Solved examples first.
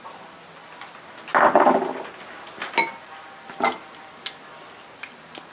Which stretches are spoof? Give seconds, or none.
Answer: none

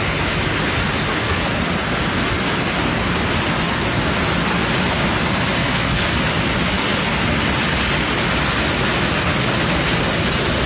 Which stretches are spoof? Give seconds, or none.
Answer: 1.1-1.6 (codec, SNAC); 5.6-6.2

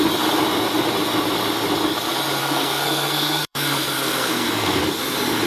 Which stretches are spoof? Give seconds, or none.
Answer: 2.4-4.8 (codec, SNAC)

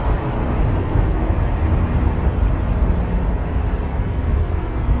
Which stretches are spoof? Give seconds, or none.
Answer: 0.8-1.5 (codec, SNAC); 3.9-5.0

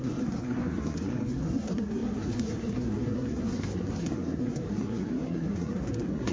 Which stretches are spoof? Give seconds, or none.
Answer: 0.0-6.3 (codec, SNAC)